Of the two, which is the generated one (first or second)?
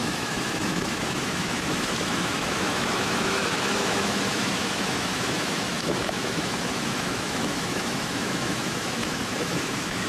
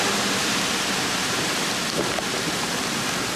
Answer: first